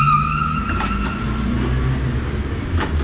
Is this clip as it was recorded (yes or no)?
yes